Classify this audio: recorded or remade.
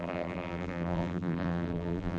remade